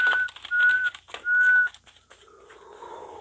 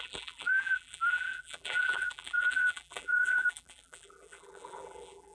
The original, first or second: first